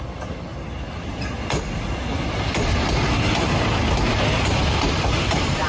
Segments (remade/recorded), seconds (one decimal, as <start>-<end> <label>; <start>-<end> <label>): 0.0-5.7 recorded